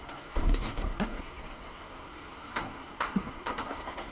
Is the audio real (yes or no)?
no